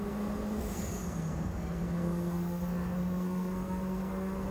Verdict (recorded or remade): remade